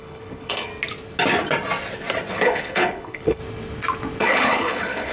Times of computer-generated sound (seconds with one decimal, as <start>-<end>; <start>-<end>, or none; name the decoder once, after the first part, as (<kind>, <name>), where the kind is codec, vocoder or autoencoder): 0.0-0.7 (codec, HILCodec); 2.3-3.4; 4.2-5.1